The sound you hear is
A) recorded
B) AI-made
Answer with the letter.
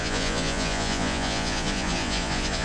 B